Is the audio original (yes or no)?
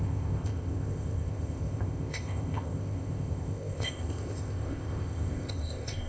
no